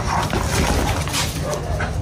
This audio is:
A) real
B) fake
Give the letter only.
A